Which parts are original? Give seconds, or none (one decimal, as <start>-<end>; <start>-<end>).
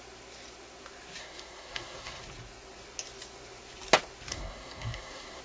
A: 0.0-1.2; 2.2-4.3